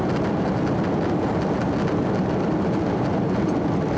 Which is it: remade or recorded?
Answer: recorded